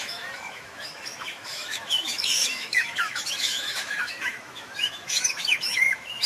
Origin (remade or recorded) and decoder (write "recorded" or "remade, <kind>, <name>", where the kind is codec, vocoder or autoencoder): remade, autoencoder, DAC-VAE